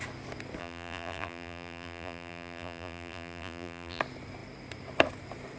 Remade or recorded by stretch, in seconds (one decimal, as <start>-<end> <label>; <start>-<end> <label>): 0.0-0.6 recorded; 0.6-4.0 remade; 4.0-5.6 recorded